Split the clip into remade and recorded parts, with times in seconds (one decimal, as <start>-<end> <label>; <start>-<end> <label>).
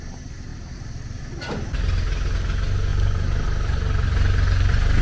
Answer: 0.0-0.5 recorded; 0.5-1.2 remade; 1.2-2.9 recorded; 2.9-5.0 remade